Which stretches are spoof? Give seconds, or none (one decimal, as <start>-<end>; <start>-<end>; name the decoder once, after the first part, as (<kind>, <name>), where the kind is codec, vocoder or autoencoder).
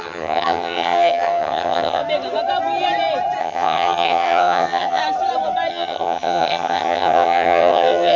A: 0.0-2.0 (vocoder, HiFi-GAN); 3.4-5.0; 5.7-8.2